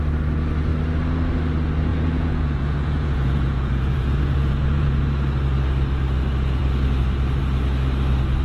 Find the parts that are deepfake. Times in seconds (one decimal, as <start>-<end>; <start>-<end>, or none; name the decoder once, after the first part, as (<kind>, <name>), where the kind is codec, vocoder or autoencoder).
1.9-4.9 (vocoder, Vocos)